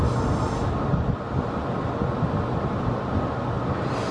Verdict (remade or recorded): recorded